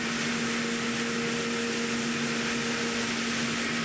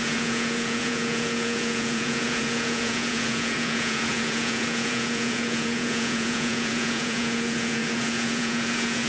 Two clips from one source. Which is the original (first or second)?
first